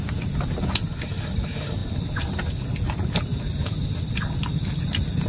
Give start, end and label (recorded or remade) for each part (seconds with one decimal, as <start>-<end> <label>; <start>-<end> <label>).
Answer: 0.0-5.3 recorded